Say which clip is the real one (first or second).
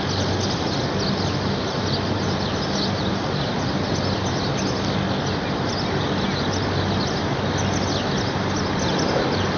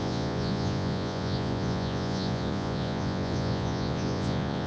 first